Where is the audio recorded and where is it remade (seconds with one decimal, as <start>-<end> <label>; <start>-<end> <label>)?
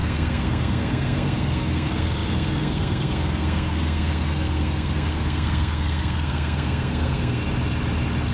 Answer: 0.0-7.4 remade; 7.4-8.3 recorded